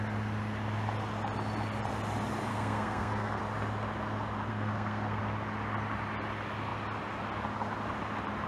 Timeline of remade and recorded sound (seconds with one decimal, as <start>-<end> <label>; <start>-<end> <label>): 0.0-2.5 recorded; 2.5-3.4 remade; 3.4-4.5 recorded; 4.5-5.2 remade; 5.2-8.5 recorded

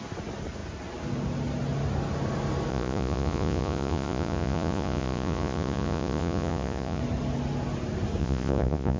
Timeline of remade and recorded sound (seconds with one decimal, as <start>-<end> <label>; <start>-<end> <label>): 0.0-2.7 recorded; 2.7-7.0 remade; 7.0-8.2 recorded; 8.2-9.0 remade

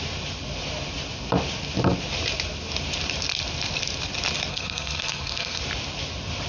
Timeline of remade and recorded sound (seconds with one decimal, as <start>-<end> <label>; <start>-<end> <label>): 0.0-4.5 recorded; 4.5-5.6 remade; 5.6-6.5 recorded